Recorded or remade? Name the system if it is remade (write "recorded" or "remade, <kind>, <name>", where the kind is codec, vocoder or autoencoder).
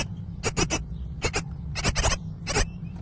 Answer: recorded